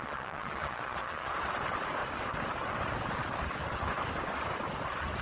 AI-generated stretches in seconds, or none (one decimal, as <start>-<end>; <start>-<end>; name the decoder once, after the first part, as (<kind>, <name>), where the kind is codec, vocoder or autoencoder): 0.0-1.3 (vocoder, Vocos)